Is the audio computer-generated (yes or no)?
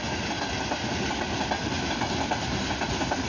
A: no